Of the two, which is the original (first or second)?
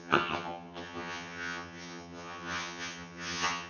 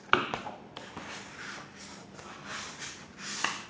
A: second